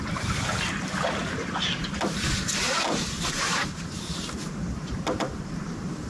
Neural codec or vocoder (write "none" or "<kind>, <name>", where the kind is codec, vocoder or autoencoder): vocoder, BigVGAN v2